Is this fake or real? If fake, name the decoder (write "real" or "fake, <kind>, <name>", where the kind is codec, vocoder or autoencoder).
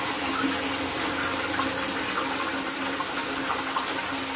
real